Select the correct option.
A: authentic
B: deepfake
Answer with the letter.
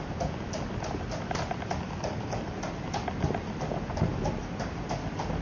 A